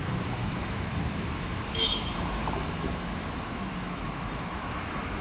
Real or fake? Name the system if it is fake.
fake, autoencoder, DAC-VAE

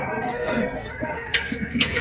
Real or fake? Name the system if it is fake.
fake, codec, SNAC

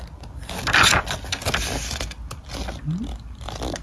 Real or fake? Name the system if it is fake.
real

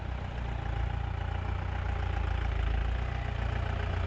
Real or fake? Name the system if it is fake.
real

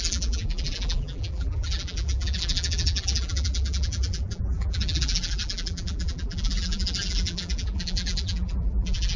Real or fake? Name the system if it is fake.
fake, vocoder, BigVGAN v2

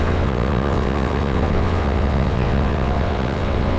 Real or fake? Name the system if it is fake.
fake, vocoder, WaveNeXt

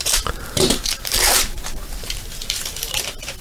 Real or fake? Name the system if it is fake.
fake, vocoder, BigVGAN v2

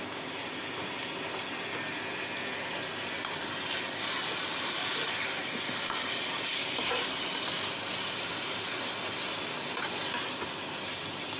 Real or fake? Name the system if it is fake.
real